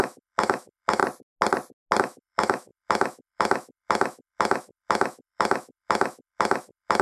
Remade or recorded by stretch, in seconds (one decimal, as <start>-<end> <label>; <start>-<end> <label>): 0.0-1.0 remade; 1.0-2.0 recorded; 2.0-7.0 remade